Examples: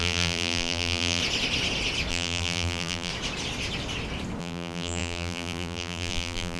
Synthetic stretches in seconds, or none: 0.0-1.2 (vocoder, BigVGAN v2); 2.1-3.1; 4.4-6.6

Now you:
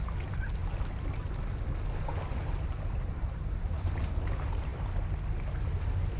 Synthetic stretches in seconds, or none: none

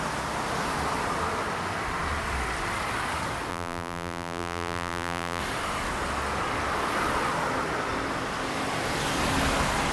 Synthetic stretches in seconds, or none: 3.5-5.4 (vocoder, BigVGAN v2)

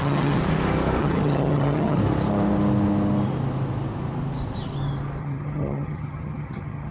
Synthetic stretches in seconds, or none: 0.0-0.4 (vocoder, HiFi-GAN); 1.0-2.0; 5.2-6.9